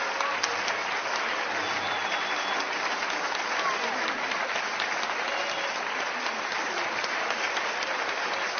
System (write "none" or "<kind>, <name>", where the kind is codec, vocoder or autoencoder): none